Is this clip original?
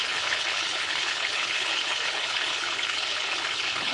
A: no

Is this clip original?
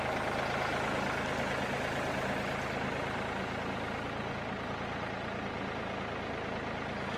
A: yes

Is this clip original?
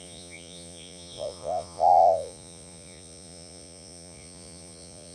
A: no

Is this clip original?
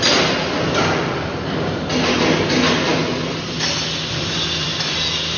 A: yes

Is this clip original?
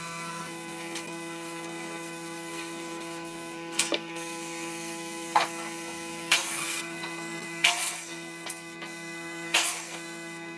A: no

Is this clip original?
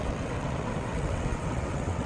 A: no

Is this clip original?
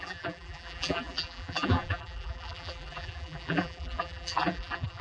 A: no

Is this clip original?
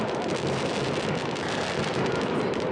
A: yes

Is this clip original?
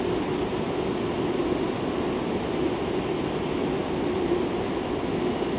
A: yes